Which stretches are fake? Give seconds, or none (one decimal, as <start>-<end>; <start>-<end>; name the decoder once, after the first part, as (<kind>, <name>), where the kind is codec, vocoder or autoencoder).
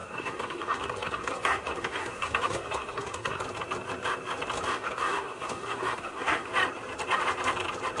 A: 0.0-3.4 (codec, SNAC); 4.7-6.5